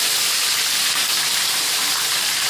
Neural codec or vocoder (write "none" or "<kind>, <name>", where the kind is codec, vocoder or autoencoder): vocoder, BigVGAN v2